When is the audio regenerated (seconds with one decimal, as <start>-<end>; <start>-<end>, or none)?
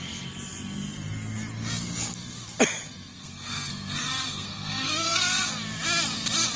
3.1-5.5